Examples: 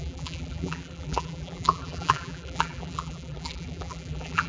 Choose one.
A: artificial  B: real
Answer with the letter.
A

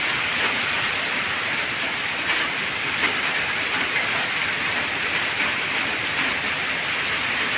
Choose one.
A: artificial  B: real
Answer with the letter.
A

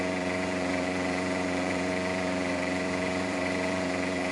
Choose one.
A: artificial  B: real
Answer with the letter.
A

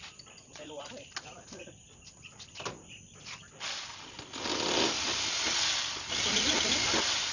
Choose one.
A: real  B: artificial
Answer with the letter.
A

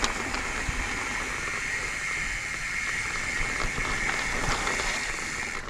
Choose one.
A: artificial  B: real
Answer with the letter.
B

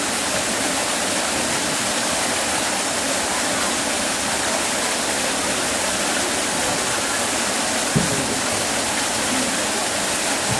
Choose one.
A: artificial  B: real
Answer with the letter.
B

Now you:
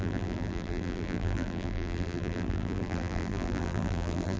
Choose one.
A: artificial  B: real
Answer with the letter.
A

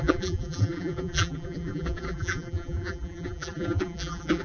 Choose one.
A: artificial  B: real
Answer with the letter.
A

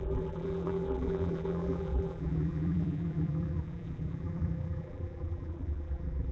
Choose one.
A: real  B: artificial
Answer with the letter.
B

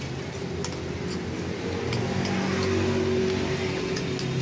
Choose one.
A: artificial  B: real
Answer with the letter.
B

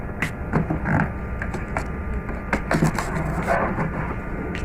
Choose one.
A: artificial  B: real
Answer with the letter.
B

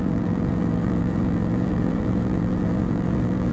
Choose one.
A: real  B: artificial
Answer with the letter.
B